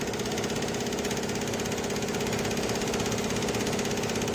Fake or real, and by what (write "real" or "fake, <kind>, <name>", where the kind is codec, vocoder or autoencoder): real